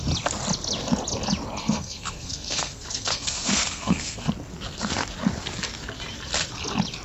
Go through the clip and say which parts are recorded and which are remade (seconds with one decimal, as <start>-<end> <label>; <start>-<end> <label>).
0.0-1.6 recorded; 1.6-4.3 remade; 4.3-7.0 recorded